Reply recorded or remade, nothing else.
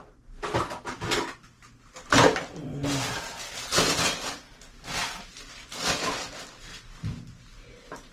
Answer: recorded